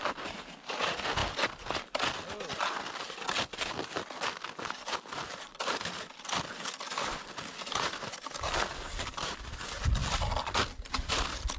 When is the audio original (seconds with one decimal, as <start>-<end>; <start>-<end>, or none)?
0.0-11.6